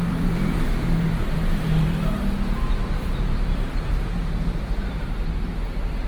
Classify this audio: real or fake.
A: fake